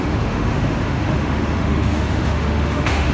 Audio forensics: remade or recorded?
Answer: remade